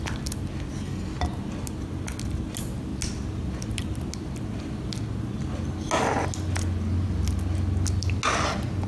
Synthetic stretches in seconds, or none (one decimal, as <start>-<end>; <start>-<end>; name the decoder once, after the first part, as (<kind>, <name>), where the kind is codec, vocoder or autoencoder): none